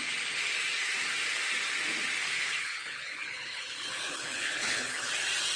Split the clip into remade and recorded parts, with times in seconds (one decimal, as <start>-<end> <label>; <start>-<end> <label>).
0.0-2.2 recorded; 2.2-5.1 remade; 5.1-5.6 recorded